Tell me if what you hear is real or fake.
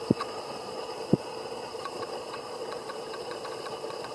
fake